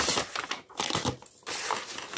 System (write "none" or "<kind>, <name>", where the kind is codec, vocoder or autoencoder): none